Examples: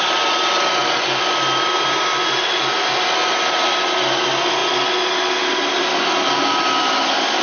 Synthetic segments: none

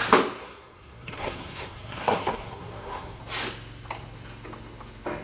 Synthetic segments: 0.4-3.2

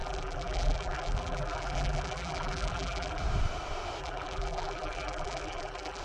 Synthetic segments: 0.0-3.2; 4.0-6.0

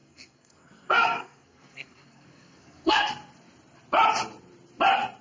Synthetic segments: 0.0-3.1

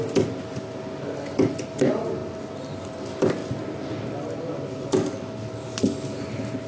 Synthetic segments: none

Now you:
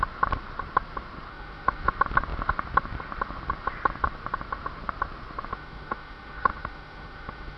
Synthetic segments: 1.3-1.9; 5.5-7.6

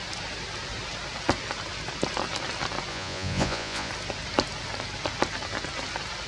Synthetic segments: 2.9-3.9

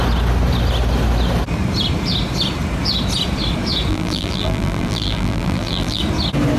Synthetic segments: 3.9-6.0